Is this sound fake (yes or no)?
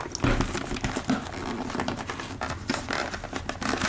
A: no